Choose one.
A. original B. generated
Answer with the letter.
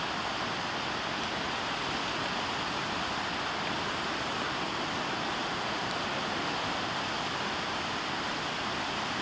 A